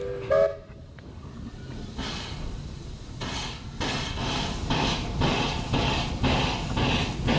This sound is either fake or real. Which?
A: real